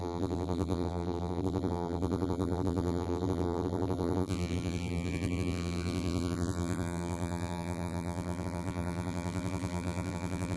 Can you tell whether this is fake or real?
fake